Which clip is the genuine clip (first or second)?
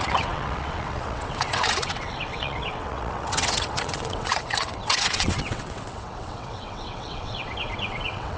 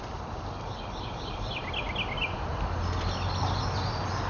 second